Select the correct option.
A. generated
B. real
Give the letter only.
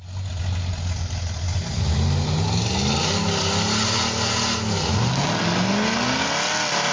B